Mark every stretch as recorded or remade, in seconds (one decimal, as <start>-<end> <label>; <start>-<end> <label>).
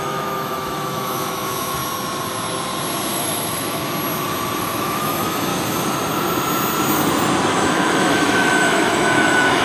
0.0-1.8 remade; 1.8-3.1 recorded; 3.1-3.8 remade; 3.8-4.6 recorded; 4.6-5.5 remade; 5.5-7.7 recorded; 7.7-9.6 remade